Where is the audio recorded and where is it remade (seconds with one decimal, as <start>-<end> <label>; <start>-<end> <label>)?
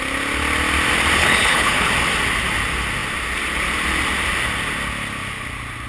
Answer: 0.0-1.2 recorded; 1.2-1.9 remade; 1.9-5.9 recorded